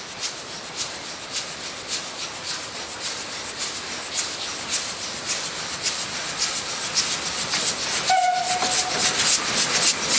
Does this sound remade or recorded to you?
recorded